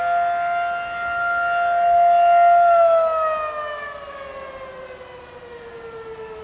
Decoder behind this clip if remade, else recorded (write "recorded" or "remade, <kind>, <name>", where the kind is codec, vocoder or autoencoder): recorded